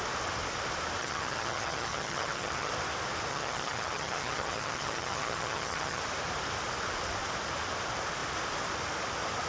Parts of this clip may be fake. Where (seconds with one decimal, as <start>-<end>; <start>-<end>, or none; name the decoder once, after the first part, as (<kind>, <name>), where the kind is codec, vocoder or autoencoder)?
1.0-2.7 (vocoder, HiFi-GAN); 3.3-6.0